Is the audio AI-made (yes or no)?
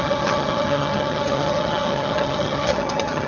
yes